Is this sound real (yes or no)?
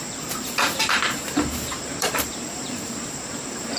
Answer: no